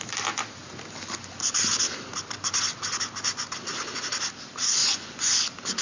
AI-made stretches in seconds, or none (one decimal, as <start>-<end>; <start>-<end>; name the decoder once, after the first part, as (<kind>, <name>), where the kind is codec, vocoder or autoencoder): 4.8-5.3 (vocoder, Vocos)